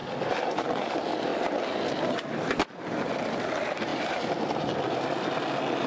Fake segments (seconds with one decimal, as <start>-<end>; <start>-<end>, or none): 1.3-3.5; 3.9-5.1